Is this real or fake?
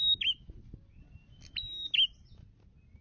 real